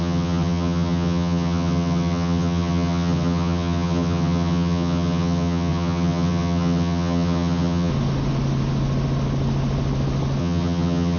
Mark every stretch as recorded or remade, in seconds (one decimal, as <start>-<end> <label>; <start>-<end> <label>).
0.0-7.9 remade; 7.9-10.4 recorded; 10.4-11.2 remade

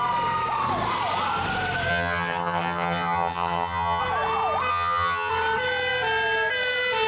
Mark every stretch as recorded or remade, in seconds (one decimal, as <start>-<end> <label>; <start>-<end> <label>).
0.0-1.9 recorded; 1.9-4.0 remade; 4.0-4.7 recorded; 4.7-5.3 remade; 5.3-7.1 recorded

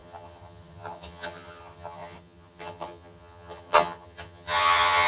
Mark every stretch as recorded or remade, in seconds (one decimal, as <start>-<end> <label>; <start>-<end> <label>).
0.0-5.1 remade

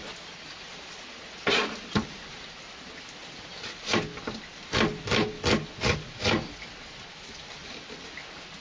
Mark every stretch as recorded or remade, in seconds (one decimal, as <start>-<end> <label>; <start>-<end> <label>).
0.0-8.6 recorded

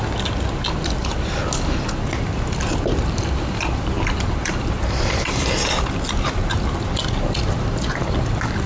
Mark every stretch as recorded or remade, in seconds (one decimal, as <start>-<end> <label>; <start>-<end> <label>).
0.0-8.7 recorded